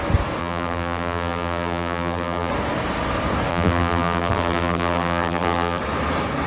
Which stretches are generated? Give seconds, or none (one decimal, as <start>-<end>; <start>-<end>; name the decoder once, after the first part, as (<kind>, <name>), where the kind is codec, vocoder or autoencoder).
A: 0.4-2.5 (vocoder, BigVGAN v2); 3.5-5.8